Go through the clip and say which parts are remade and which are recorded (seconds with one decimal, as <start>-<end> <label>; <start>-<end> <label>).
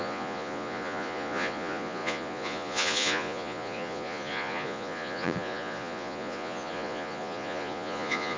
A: 0.0-8.4 remade